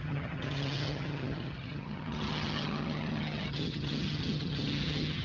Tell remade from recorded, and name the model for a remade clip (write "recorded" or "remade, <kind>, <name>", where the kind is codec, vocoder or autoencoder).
remade, vocoder, HiFi-GAN